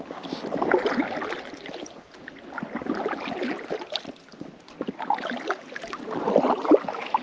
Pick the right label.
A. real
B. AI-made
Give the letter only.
A